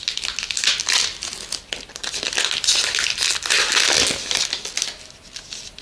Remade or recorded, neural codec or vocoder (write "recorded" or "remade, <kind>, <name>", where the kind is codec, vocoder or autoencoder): recorded